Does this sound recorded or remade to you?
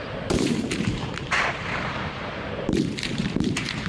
remade